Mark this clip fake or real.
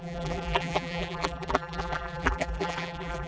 fake